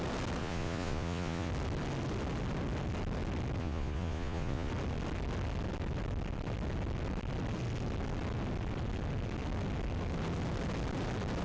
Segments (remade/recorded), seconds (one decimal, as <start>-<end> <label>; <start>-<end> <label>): 0.0-0.4 recorded; 0.4-1.5 remade; 1.5-3.6 recorded; 3.6-4.7 remade; 4.7-11.4 recorded